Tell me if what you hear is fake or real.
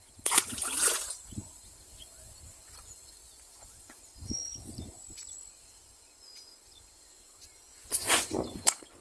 fake